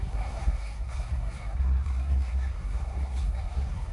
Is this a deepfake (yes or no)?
yes